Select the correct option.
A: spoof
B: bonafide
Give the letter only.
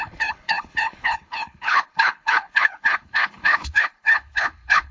A